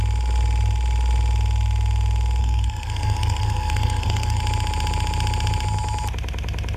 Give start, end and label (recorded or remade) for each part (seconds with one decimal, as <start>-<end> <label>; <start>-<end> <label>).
0.0-2.4 recorded; 2.4-4.4 remade; 4.4-6.8 recorded